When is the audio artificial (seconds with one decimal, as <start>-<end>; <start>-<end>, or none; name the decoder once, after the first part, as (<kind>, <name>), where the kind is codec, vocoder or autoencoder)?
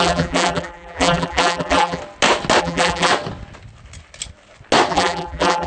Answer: 0.0-2.0 (vocoder, BigVGAN v2); 2.6-3.1; 4.9-5.7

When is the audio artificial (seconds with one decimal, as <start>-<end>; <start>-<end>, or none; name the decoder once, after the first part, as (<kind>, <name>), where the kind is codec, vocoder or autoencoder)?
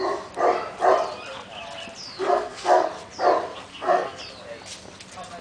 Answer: 2.3-2.9 (codec, SNAC); 3.7-4.2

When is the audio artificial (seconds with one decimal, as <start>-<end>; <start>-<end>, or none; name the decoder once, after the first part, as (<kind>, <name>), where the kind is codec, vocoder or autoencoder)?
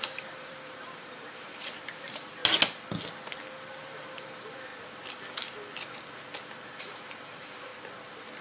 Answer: 0.0-2.4 (vocoder, BigVGAN v2); 3.8-4.7; 6.8-7.7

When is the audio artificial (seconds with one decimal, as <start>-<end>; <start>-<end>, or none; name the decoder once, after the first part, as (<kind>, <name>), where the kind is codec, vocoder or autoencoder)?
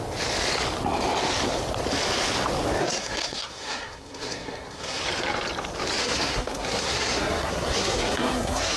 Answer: 2.8-5.0 (codec, SNAC); 6.0-8.8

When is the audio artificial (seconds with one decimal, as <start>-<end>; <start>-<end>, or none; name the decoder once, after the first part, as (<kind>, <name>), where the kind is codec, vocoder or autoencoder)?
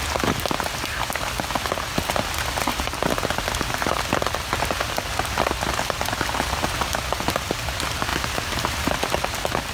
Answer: none